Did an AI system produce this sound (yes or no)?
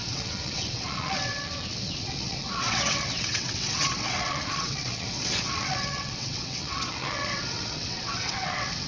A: yes